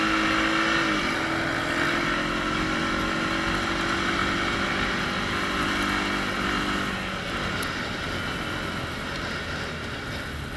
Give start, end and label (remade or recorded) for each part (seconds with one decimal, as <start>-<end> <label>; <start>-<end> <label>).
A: 0.0-10.6 recorded